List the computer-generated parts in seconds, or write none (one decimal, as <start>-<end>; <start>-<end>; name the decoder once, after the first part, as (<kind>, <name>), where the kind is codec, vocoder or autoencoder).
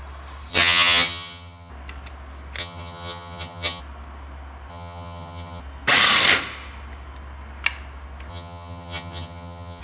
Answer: 0.5-1.7 (vocoder, HiFi-GAN); 2.6-3.8; 4.7-5.6; 8.3-9.8